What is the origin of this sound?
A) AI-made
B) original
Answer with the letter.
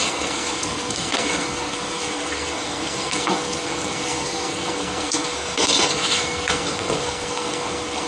A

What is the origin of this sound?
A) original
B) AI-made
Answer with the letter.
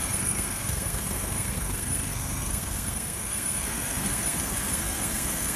B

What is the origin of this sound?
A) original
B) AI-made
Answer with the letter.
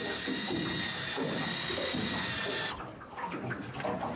A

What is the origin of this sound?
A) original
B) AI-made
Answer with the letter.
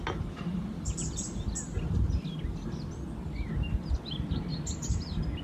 A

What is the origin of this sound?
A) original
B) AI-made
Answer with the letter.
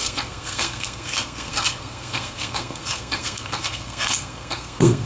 B